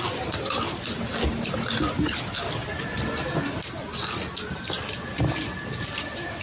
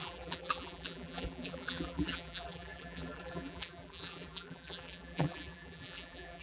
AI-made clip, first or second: second